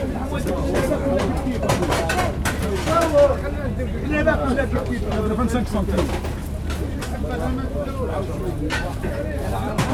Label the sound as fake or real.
real